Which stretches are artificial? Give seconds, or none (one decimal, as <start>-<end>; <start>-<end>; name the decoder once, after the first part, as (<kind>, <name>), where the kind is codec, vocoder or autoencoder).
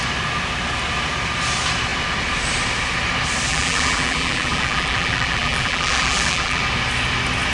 3.5-6.6 (vocoder, BigVGAN v2)